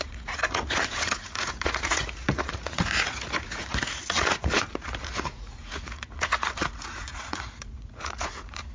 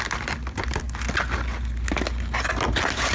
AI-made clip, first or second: first